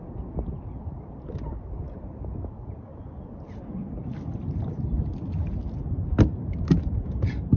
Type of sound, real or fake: real